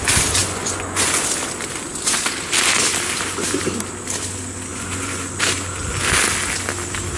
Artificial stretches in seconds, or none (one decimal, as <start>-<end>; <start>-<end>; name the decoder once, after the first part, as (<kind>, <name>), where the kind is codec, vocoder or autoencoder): 0.4-1.2 (vocoder, Vocos); 4.7-5.4